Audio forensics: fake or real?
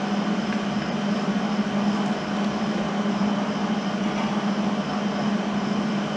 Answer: real